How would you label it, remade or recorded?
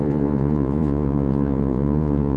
remade